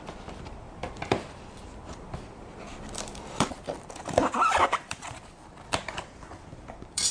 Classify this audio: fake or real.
fake